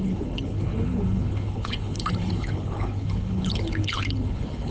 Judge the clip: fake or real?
fake